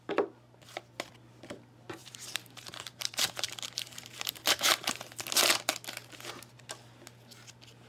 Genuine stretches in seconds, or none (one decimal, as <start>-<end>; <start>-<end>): 0.0-2.0; 5.2-7.9